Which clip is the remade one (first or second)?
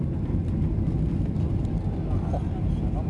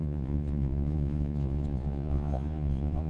second